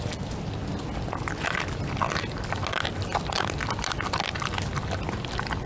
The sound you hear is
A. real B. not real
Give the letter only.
A